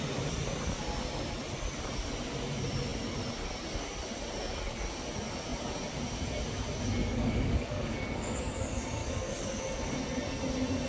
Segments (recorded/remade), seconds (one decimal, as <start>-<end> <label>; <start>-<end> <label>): 0.0-7.0 recorded; 7.0-8.5 remade; 8.5-9.0 recorded; 9.0-9.6 remade; 9.6-10.9 recorded

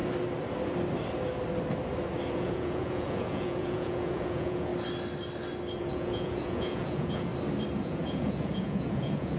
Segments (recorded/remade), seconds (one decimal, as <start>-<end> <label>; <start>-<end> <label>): 0.0-2.3 recorded; 2.3-4.7 remade; 4.7-5.8 recorded; 5.8-7.3 remade; 7.3-7.8 recorded; 7.8-9.4 remade